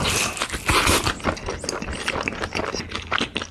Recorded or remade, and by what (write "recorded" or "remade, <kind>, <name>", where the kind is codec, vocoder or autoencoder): recorded